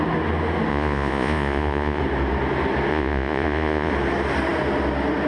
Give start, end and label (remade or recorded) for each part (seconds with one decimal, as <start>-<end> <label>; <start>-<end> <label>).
0.0-0.7 recorded; 0.7-2.0 remade; 2.0-2.9 recorded; 2.9-3.9 remade; 3.9-5.3 recorded